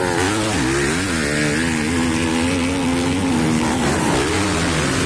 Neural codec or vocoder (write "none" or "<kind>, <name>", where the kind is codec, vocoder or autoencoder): none